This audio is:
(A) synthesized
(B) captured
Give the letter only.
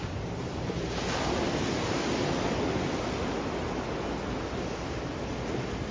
B